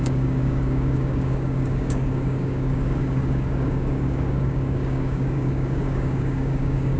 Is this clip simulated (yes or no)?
yes